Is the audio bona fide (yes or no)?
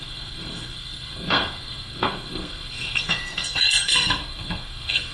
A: no